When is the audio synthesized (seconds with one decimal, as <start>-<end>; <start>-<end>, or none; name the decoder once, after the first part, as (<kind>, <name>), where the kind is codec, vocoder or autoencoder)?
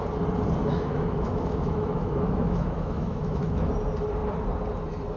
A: 0.6-3.7 (autoencoder, DAC-VAE)